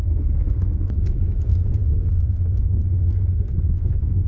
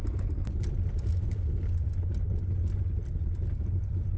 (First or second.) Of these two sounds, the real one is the second